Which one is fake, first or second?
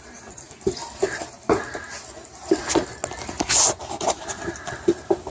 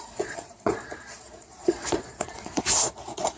second